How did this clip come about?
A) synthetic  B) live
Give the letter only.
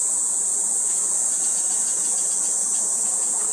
A